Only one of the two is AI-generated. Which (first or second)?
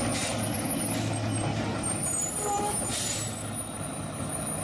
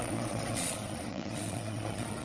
second